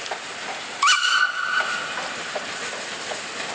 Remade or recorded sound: recorded